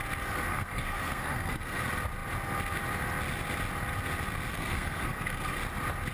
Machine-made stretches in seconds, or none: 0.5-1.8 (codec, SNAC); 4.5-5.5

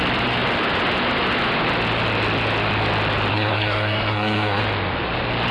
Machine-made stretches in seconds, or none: 3.3-4.6 (codec, SNAC)